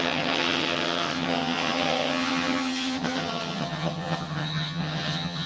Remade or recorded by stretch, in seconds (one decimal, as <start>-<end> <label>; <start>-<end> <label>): 0.0-5.5 remade